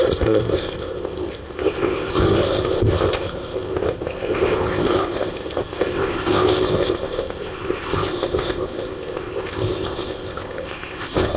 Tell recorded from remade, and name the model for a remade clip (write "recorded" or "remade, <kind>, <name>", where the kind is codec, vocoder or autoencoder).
remade, codec, ZipCodec